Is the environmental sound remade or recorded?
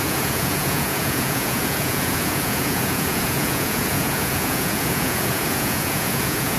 remade